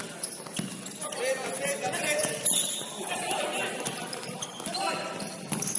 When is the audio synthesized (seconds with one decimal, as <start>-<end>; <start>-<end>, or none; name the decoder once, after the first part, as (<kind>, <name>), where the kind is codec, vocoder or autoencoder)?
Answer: 2.2-3.4 (vocoder, BigVGAN v2)